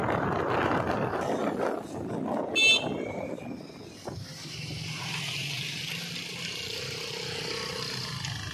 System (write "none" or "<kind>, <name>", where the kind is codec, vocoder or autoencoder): none